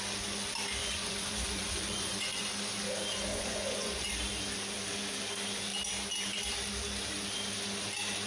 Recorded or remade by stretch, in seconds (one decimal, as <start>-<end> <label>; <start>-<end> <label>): 0.0-0.8 recorded; 0.8-2.5 remade; 2.5-3.3 recorded; 3.3-4.1 remade; 4.1-8.3 recorded